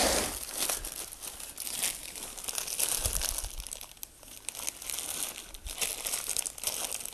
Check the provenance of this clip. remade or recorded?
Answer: recorded